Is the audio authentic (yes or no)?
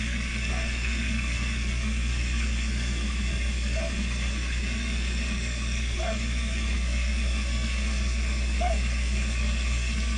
no